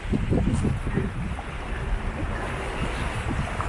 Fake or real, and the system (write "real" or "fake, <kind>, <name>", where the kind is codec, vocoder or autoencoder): real